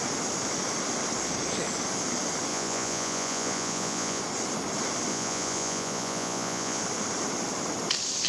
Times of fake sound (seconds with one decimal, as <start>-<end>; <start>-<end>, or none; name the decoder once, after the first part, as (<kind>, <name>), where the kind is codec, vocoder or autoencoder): 2.5-4.2 (vocoder, Vocos); 5.1-6.8